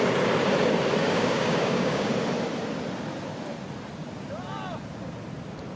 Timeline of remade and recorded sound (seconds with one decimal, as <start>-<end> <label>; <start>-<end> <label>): 0.0-1.0 recorded; 1.0-2.1 remade; 2.1-5.8 recorded